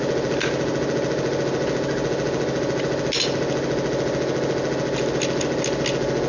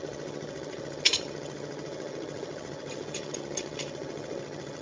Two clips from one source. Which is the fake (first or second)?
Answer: second